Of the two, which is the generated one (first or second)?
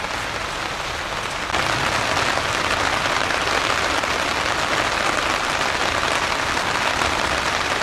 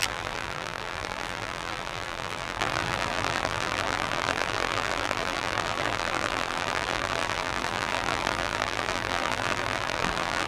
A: second